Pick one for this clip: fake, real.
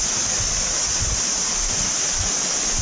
real